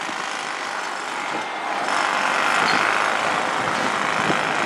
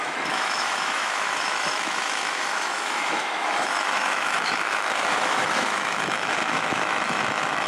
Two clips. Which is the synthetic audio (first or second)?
second